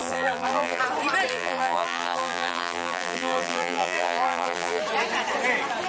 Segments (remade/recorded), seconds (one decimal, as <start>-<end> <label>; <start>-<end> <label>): 0.0-0.8 remade; 0.8-1.3 recorded; 1.3-4.8 remade; 4.8-5.9 recorded